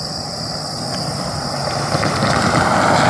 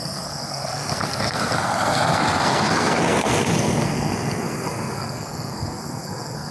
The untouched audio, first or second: first